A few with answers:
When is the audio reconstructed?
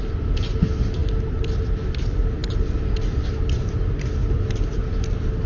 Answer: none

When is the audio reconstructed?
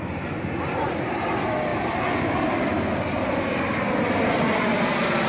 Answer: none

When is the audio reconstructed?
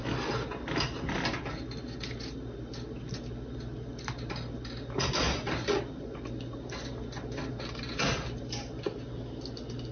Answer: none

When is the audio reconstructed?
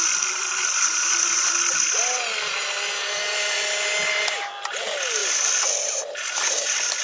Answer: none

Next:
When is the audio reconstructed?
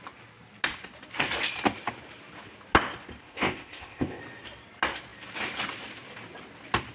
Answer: 3.2-4.2 (codec, ZipCodec)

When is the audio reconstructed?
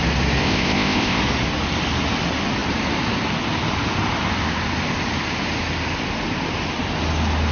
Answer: 0.4-1.2 (codec, ZipCodec)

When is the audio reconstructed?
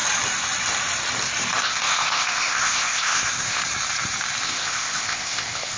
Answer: 1.6-3.6 (codec, ZipCodec); 4.4-5.8